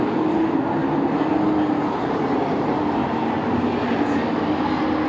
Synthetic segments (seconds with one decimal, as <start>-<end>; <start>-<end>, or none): 3.0-3.8